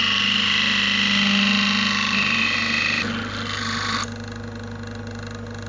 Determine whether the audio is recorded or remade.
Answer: recorded